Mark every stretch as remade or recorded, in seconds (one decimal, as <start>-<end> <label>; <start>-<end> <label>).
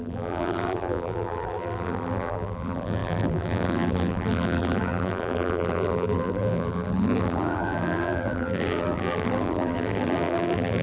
0.0-10.8 remade